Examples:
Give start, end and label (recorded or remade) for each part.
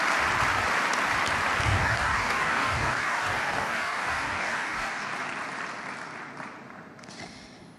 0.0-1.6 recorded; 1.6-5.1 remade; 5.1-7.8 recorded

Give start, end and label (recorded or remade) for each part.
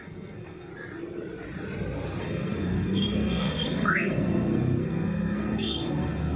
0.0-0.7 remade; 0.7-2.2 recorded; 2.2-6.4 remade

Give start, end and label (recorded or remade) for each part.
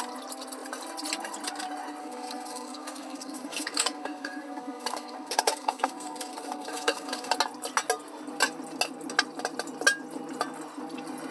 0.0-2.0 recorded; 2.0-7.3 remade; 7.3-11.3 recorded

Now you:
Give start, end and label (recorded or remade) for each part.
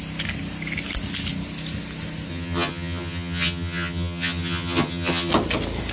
0.0-2.3 recorded; 2.3-5.3 remade; 5.3-5.9 recorded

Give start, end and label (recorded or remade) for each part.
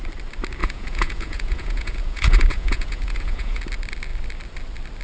0.0-0.6 recorded; 0.6-3.6 remade; 3.6-5.0 recorded